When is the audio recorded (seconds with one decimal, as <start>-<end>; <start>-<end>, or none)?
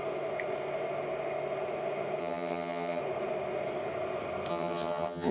0.0-2.2; 3.0-4.5